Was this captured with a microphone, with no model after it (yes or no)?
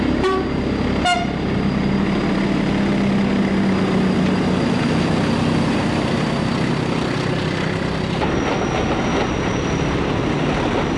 yes